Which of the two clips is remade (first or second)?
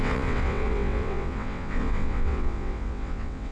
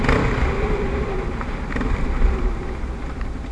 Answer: first